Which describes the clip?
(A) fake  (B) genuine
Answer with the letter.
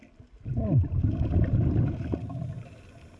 B